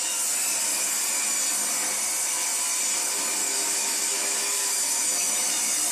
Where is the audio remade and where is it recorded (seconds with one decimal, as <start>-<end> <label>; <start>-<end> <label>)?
0.0-3.4 recorded; 3.4-5.5 remade; 5.5-5.9 recorded